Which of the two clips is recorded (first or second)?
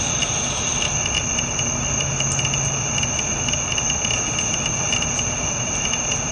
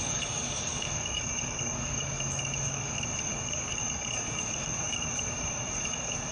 first